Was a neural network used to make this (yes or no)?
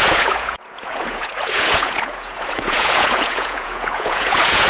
yes